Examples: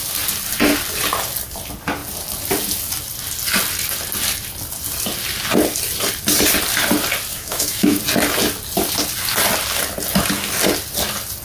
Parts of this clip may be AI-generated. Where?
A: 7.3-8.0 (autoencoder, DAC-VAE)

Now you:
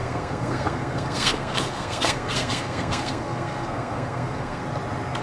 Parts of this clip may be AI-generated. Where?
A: 0.0-4.6 (codec, SNAC)

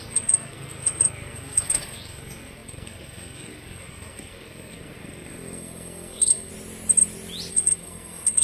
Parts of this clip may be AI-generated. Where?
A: 0.0-6.5 (codec, SNAC); 7.5-8.4

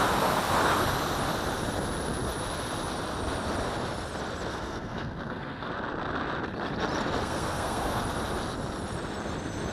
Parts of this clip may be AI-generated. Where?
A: 4.5-5.7 (codec, SNAC); 7.2-8.0